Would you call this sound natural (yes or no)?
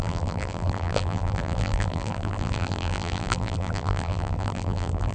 no